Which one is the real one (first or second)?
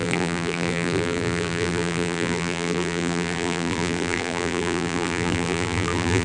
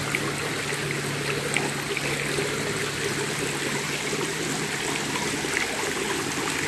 second